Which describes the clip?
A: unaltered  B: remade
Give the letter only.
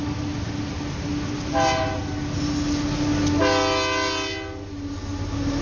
A